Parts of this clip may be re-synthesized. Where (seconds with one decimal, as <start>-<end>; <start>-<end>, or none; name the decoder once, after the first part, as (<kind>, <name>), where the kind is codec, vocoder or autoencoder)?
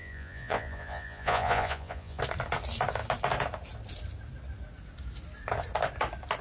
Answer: 0.0-2.2 (vocoder, Vocos)